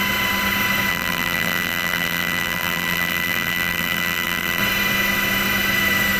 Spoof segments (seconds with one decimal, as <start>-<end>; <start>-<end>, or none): 0.9-4.6